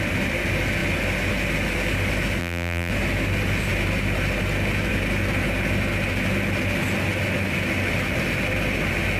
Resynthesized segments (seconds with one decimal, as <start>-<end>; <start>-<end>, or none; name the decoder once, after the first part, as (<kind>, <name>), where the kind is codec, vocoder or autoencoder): 2.4-2.9 (vocoder, BigVGAN v2)